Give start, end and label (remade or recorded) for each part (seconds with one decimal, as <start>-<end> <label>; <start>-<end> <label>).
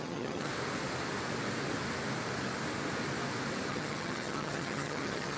0.0-0.5 remade; 0.5-3.7 recorded; 3.7-5.4 remade